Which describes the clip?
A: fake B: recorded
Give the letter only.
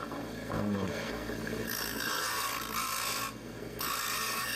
A